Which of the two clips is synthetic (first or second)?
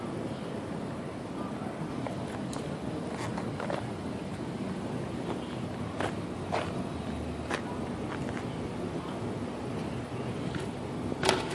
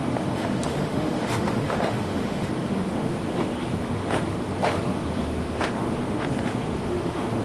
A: second